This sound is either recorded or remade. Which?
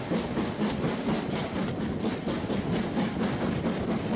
recorded